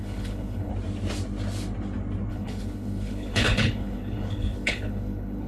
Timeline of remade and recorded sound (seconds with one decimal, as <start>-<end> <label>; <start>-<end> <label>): 0.0-0.7 remade; 0.7-2.3 recorded; 2.3-5.5 remade